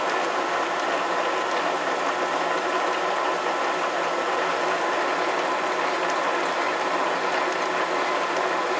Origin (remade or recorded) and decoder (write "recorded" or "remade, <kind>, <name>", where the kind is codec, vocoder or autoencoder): recorded